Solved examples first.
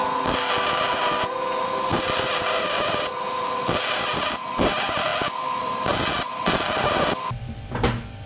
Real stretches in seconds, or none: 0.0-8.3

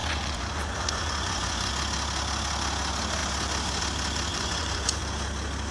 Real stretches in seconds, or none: 1.7-4.3; 5.0-5.7